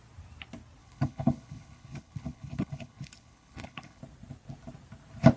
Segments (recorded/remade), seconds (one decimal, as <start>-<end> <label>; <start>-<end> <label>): 0.0-0.8 recorded; 0.8-4.0 remade; 4.0-5.4 recorded

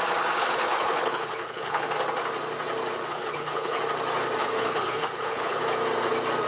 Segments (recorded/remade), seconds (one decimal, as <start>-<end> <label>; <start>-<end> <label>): 0.0-0.4 recorded; 0.4-1.9 remade; 1.9-3.1 recorded; 3.1-3.8 remade; 3.8-4.4 recorded; 4.4-5.6 remade; 5.6-6.5 recorded

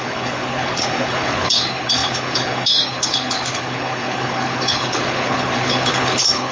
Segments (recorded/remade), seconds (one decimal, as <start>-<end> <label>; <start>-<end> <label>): 0.0-6.5 remade

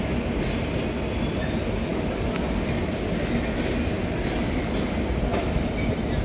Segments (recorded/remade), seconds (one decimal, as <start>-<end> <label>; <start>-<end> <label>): 0.0-6.2 recorded

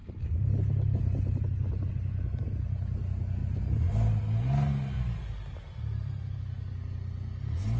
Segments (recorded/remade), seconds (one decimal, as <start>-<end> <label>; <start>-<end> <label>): 0.0-7.8 recorded